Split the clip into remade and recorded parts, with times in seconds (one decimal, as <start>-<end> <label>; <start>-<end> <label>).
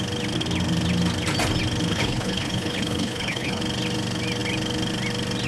0.0-1.9 recorded; 1.9-3.6 remade; 3.6-5.5 recorded